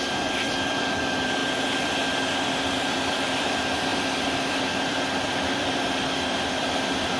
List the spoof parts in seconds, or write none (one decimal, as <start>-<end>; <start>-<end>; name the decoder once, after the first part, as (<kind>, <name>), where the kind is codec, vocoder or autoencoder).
0.0-1.4 (vocoder, BigVGAN v2); 2.1-7.2